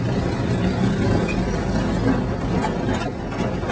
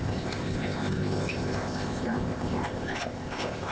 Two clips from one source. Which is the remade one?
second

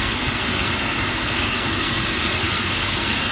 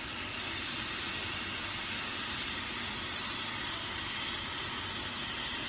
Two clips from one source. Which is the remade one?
first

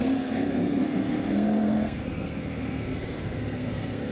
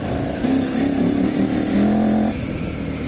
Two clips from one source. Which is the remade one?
first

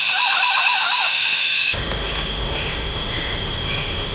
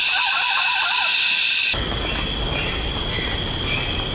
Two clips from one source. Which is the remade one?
first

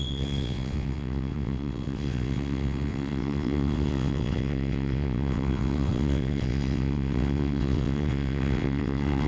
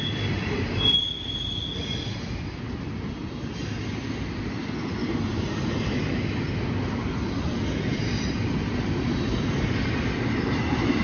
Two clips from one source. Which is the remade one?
first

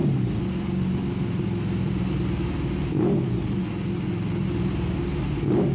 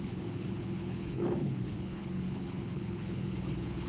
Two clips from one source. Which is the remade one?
second